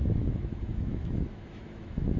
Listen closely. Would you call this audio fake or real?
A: fake